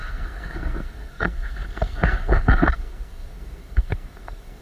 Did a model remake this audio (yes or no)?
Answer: yes